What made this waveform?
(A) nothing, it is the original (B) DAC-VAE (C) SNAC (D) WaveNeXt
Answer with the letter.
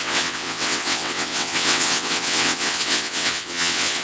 D